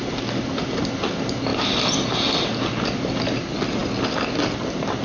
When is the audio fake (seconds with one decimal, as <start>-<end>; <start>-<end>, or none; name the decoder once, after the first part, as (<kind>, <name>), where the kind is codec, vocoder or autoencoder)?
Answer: none